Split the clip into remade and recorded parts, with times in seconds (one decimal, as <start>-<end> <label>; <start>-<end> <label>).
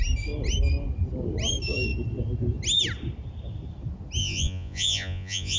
0.0-4.2 recorded; 4.2-5.6 remade